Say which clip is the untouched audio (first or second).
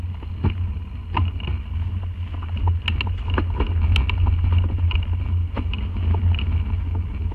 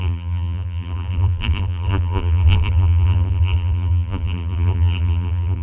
first